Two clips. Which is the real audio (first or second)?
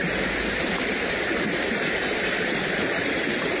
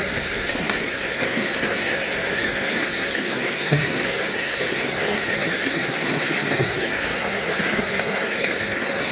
first